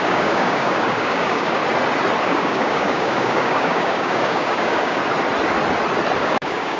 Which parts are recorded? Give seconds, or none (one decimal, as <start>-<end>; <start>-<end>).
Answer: 1.6-2.2; 5.0-6.2